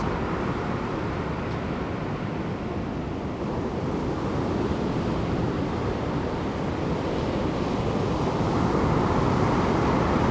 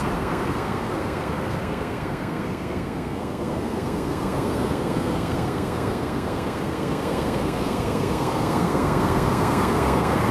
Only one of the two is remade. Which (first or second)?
second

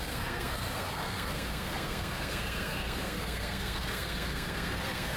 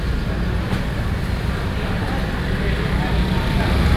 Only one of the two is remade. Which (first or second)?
first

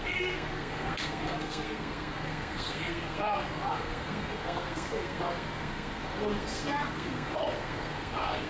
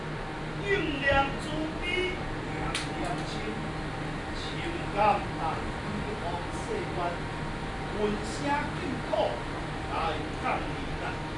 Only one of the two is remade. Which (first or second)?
first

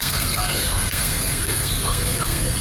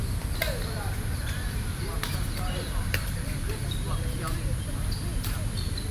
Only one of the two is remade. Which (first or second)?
first